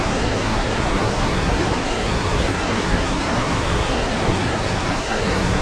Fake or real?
fake